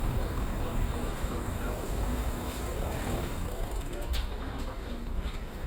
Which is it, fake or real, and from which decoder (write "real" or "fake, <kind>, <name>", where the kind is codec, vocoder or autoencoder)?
fake, codec, DAC